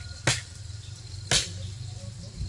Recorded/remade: recorded